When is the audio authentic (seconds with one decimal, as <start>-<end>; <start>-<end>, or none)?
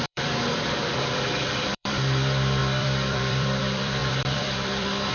none